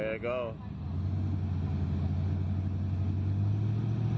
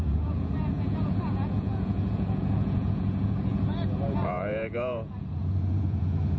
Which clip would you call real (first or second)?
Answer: first